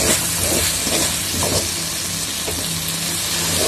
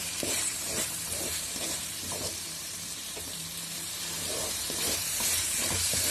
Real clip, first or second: first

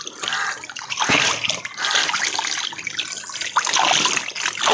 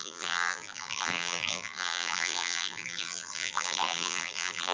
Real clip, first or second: first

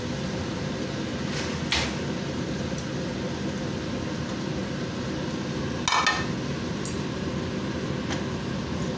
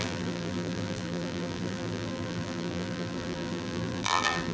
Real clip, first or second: first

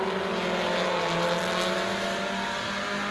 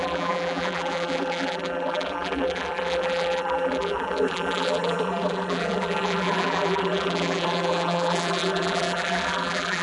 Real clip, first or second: first